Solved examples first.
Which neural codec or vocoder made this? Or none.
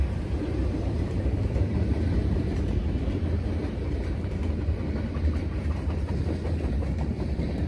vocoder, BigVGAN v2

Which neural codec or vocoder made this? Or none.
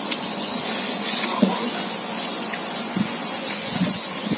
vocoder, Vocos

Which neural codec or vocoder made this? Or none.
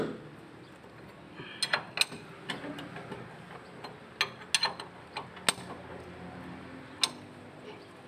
none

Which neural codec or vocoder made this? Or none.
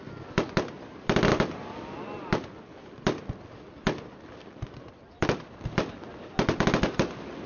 none